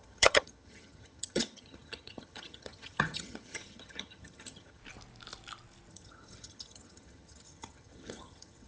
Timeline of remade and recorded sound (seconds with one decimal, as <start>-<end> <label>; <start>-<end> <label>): 0.0-4.8 remade; 4.8-5.9 recorded; 5.9-8.7 remade